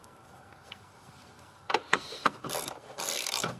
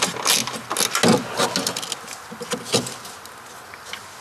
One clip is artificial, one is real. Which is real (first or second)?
second